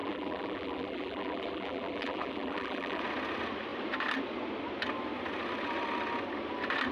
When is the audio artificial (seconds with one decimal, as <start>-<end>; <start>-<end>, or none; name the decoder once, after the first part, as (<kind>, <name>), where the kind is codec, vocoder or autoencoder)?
0.0-3.0 (vocoder, BigVGAN v2)